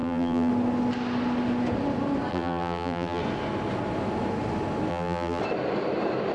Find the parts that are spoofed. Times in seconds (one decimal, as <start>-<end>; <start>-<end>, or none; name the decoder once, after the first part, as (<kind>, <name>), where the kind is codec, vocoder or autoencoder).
0.0-0.5 (vocoder, BigVGAN v2); 2.3-3.2; 4.9-5.4